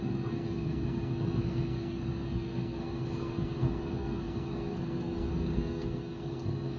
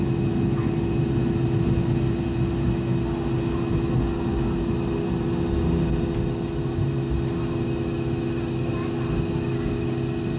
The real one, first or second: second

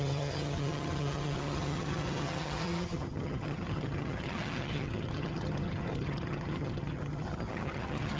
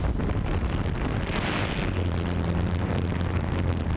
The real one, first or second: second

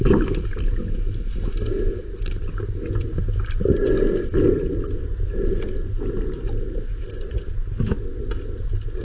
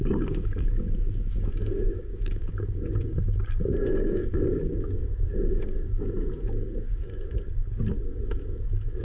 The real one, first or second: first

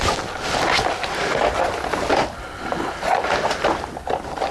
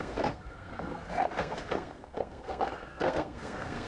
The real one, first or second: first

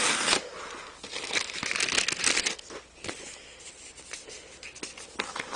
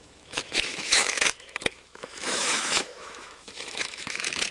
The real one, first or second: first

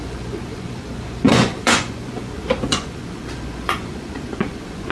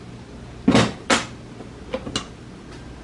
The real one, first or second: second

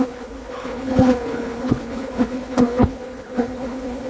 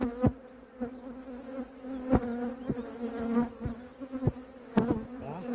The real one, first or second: second